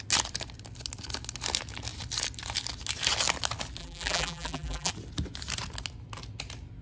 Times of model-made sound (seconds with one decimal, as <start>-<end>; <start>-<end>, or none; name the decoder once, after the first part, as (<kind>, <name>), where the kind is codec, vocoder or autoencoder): 3.8-4.9 (vocoder, BigVGAN v2)